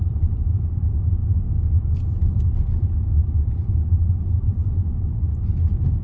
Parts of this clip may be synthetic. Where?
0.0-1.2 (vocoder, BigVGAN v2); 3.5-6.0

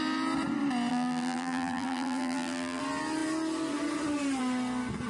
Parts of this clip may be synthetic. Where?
0.9-2.8 (vocoder, BigVGAN v2)

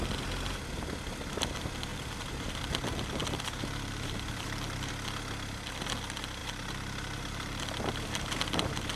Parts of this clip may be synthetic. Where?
1.9-2.6 (vocoder, BigVGAN v2); 3.2-4.9; 6.4-7.6

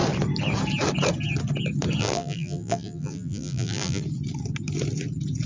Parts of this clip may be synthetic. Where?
2.0-4.0 (vocoder, BigVGAN v2)

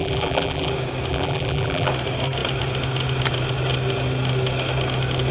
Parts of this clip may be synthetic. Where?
0.0-0.7 (vocoder, BigVGAN v2); 1.1-1.9

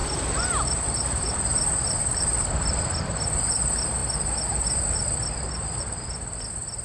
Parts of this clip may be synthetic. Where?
0.0-3.0 (vocoder, BigVGAN v2)